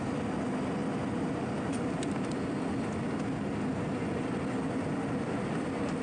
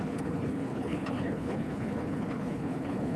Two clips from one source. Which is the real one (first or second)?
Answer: first